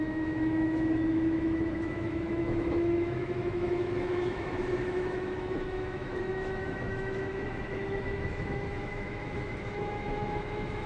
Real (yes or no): no